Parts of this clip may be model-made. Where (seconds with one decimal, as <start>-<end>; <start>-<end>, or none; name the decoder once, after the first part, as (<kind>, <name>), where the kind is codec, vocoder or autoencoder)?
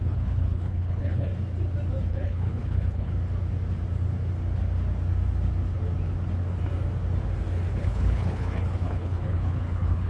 0.0-1.3 (codec, HILCodec); 2.1-3.1; 7.7-10.1